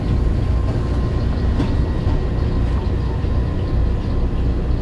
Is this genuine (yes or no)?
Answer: yes